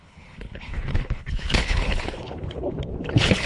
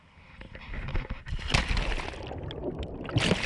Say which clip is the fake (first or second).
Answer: first